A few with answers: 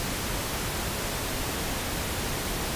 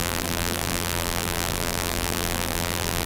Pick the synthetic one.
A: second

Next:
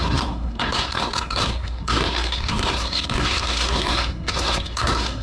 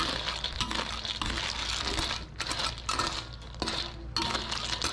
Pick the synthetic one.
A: first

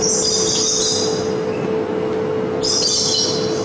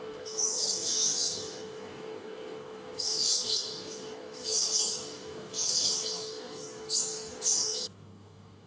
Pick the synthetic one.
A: second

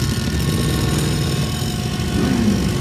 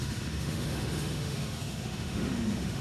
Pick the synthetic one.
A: second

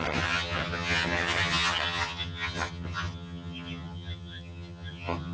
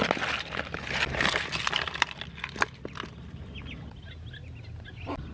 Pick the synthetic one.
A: first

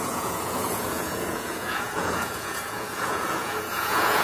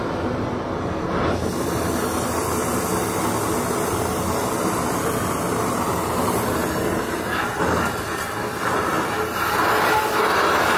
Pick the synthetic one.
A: first